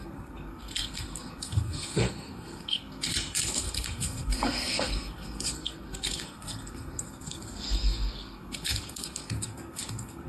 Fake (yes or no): yes